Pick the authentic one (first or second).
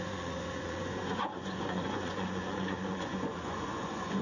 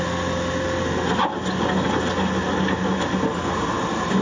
second